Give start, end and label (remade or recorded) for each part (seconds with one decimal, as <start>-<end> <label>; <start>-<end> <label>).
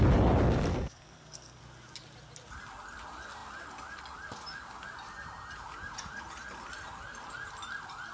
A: 0.0-0.7 recorded; 0.7-1.6 remade; 1.6-8.1 recorded